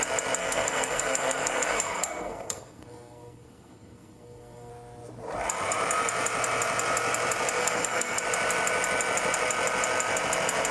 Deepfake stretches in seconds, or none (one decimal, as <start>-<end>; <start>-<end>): 0.4-4.7; 7.6-8.2